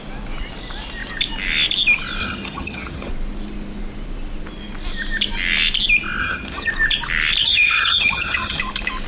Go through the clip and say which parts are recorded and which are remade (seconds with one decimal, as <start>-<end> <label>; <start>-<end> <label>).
0.0-2.2 recorded; 2.2-3.1 remade; 3.1-6.2 recorded; 6.2-6.7 remade; 6.7-7.4 recorded; 7.4-8.6 remade; 8.6-9.1 recorded